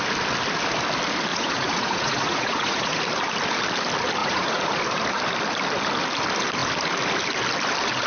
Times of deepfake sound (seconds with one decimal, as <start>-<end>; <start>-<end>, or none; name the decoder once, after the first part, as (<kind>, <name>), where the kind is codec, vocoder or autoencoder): 1.3-3.0 (vocoder, Vocos); 4.2-4.8